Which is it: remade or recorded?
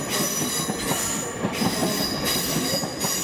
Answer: recorded